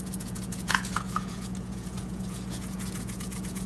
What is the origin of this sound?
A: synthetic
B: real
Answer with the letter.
A